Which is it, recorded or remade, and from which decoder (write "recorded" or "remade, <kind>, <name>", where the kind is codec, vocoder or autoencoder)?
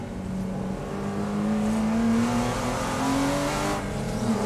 recorded